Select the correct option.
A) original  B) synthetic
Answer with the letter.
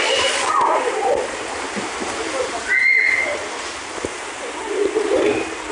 A